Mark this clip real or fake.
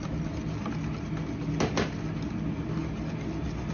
real